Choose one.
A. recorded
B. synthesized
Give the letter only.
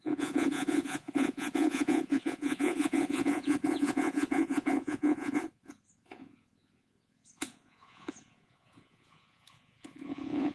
B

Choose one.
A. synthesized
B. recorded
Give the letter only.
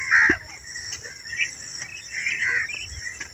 B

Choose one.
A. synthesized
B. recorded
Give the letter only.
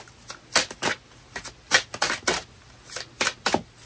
B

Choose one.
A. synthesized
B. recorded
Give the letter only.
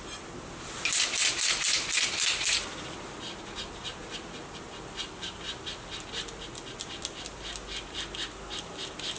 B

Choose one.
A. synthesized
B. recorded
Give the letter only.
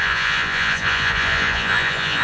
A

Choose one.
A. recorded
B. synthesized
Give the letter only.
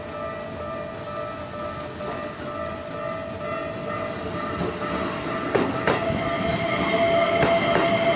A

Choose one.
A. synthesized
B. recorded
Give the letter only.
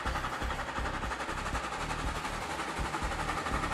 B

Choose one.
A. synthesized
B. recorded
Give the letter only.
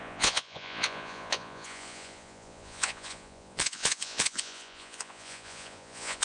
A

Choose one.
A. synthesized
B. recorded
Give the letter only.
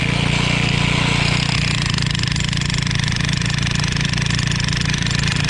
B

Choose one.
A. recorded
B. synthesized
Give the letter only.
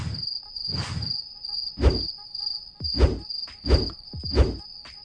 A